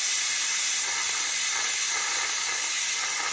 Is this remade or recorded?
recorded